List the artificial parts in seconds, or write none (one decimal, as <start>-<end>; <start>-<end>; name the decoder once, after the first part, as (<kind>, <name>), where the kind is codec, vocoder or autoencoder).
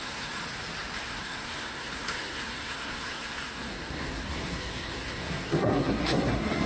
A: 0.0-0.4 (codec, SNAC); 1.0-6.7